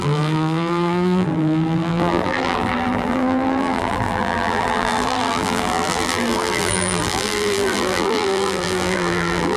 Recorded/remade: remade